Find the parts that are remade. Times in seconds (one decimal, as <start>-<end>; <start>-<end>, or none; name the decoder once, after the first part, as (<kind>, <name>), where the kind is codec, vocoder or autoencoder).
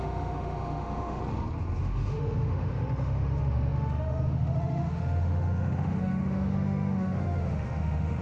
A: 0.0-1.2 (autoencoder, DAC-VAE); 1.8-8.2